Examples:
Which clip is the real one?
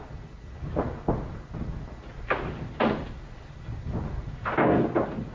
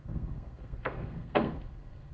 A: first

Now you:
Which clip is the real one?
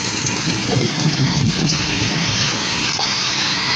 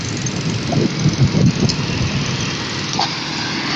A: second